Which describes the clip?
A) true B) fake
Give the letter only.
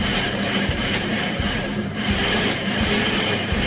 B